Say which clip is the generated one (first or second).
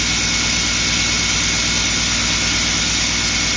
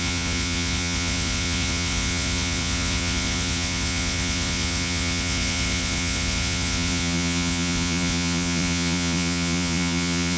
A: second